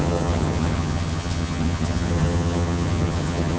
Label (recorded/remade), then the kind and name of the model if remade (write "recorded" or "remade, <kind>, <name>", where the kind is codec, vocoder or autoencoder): remade, vocoder, HiFi-GAN